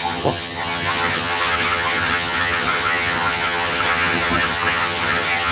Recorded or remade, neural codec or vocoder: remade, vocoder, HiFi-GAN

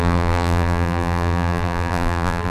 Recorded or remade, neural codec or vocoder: remade, vocoder, BigVGAN v2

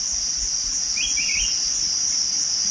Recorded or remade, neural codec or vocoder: recorded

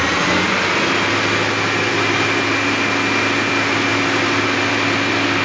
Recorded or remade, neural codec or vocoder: recorded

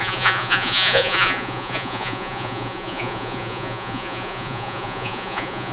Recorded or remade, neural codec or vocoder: remade, vocoder, Vocos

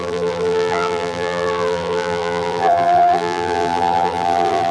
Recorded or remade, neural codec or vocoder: remade, vocoder, BigVGAN v2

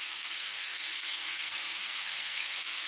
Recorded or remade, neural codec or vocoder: remade, codec, SNAC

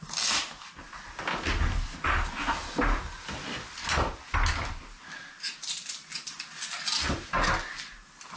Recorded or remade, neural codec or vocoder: recorded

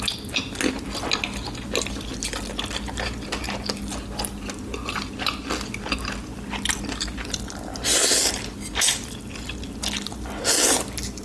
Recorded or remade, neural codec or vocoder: recorded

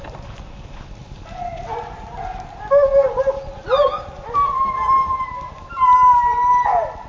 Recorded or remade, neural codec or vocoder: recorded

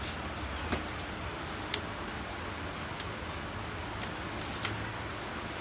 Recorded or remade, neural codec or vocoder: recorded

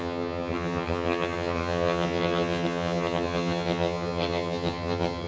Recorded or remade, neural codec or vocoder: remade, vocoder, HiFi-GAN